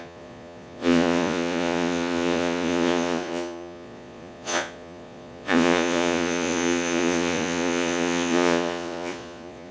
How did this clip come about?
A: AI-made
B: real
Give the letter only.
A